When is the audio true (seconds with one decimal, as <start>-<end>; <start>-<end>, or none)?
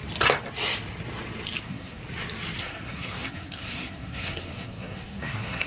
0.0-1.6; 2.0-2.6